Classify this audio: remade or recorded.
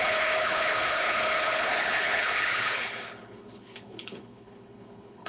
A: remade